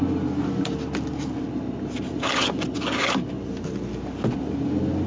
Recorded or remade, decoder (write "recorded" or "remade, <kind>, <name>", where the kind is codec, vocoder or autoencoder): recorded